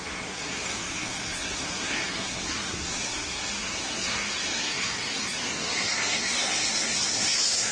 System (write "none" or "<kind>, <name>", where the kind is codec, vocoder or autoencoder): codec, SNAC